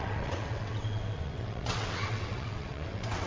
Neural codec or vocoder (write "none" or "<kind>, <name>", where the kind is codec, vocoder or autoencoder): vocoder, WaveNeXt